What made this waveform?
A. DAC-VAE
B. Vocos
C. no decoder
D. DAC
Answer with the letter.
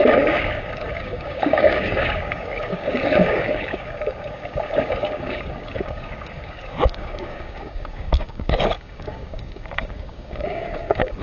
D